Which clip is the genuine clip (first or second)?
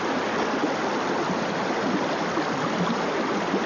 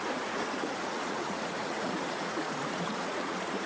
first